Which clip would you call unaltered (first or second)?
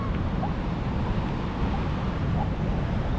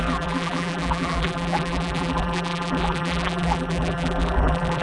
first